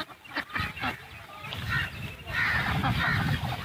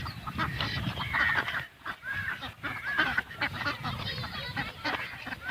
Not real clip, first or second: second